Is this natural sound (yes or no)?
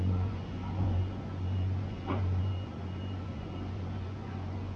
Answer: no